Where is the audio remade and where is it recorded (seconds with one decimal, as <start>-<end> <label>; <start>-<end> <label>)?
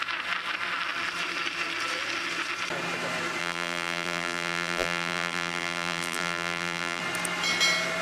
0.0-3.4 recorded; 3.4-7.0 remade; 7.0-8.0 recorded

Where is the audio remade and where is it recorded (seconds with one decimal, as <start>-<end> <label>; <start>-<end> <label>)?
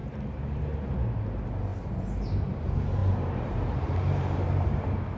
0.0-0.6 remade; 0.6-1.7 recorded; 1.7-2.3 remade; 2.3-3.0 recorded; 3.0-4.3 remade; 4.3-5.2 recorded